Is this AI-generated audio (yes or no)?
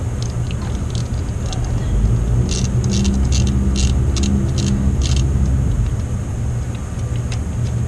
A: no